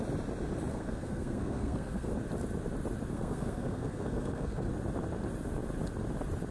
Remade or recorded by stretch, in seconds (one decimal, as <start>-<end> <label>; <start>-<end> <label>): 0.0-0.7 recorded; 0.7-2.1 remade; 2.1-3.1 recorded; 3.1-4.7 remade; 4.7-6.5 recorded